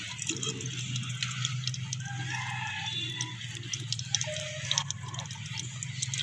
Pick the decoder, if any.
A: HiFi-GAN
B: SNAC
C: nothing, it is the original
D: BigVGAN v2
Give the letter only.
C